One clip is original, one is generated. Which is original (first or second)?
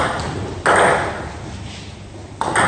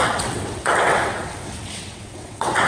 first